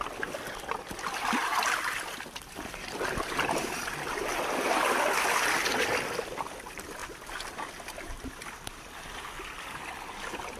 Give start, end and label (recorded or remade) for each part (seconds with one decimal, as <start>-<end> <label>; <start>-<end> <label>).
0.0-10.6 recorded